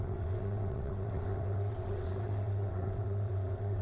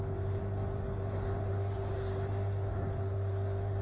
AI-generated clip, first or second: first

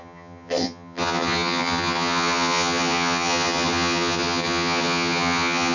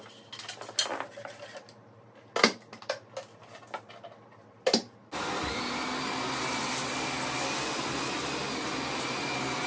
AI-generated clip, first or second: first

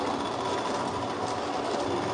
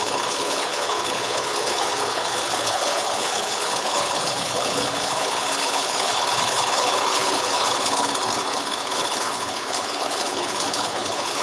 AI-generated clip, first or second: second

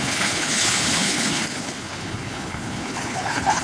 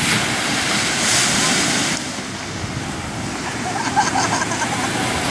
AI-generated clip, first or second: first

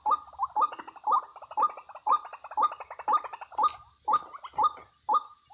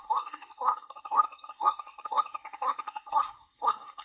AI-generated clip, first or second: second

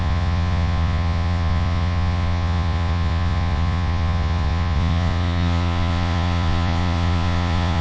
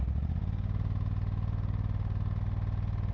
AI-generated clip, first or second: first